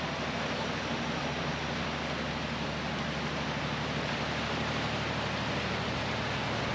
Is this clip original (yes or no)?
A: yes